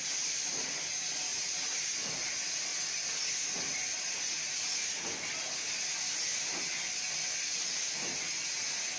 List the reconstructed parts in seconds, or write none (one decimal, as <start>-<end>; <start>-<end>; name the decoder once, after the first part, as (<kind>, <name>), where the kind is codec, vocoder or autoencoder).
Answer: none